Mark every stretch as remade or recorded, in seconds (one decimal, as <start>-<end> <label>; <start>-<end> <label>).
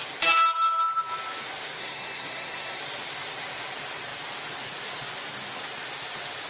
0.0-1.8 recorded; 1.8-2.8 remade; 2.8-6.5 recorded